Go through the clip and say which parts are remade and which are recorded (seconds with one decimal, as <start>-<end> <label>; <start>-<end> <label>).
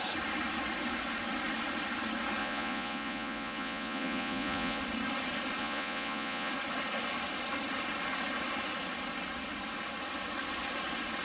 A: 0.0-2.4 recorded; 2.4-4.8 remade; 4.8-5.6 recorded; 5.6-6.5 remade; 6.5-11.2 recorded